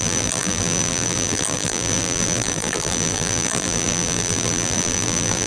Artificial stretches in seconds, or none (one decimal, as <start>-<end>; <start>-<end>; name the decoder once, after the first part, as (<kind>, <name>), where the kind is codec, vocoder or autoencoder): 0.0-5.5 (vocoder, BigVGAN v2)